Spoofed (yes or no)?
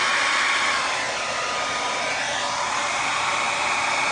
no